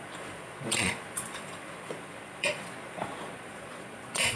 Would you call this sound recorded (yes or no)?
no